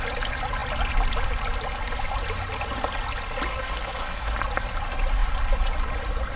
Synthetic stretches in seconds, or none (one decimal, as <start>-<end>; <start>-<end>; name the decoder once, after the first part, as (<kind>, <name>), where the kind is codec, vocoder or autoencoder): 3.5-4.3 (codec, SNAC)